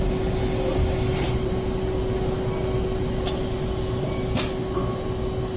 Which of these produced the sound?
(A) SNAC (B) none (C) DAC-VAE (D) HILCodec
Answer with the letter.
B